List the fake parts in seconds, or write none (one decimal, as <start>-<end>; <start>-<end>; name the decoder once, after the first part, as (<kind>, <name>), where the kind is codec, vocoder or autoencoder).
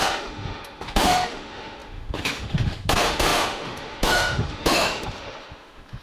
0.0-6.0 (autoencoder, DAC-VAE)